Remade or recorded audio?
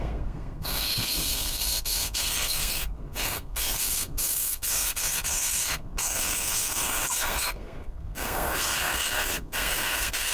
remade